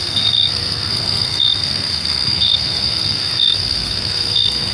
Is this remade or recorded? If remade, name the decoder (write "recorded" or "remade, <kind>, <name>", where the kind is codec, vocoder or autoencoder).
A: remade, codec, SNAC